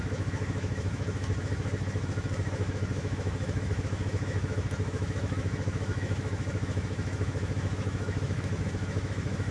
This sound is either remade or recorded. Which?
remade